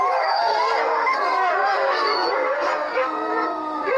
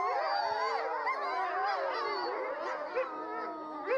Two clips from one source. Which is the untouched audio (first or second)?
second